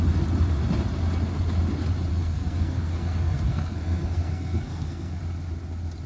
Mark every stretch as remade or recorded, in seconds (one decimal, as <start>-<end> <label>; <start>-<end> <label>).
0.0-2.1 recorded; 2.1-5.2 remade; 5.2-6.1 recorded